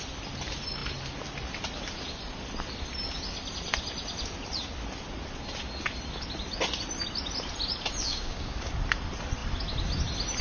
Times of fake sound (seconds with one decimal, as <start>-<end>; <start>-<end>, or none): 8.1-8.7